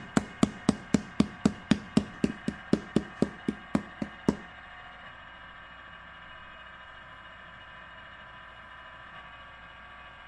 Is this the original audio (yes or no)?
yes